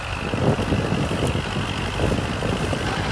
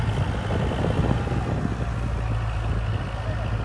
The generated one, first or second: first